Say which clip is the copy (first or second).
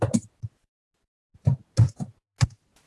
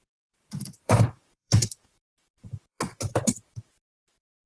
second